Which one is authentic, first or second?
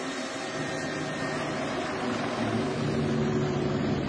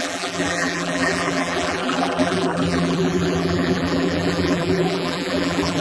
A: first